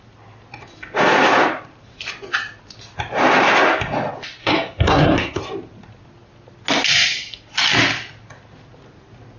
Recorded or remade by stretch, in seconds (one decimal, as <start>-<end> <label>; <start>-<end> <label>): 0.0-4.4 recorded; 4.4-5.4 remade; 5.4-9.4 recorded